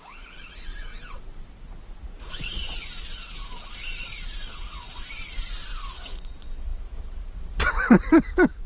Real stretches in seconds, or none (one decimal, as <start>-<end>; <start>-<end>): 0.7-2.0; 3.2-4.6; 5.0-5.9